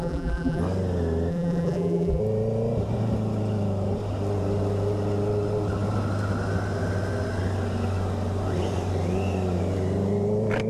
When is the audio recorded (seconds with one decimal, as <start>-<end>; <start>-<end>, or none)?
0.6-1.3; 2.2-10.7